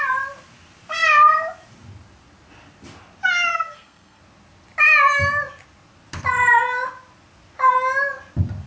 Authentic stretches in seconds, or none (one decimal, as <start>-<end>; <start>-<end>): 0.0-3.5; 4.2-8.7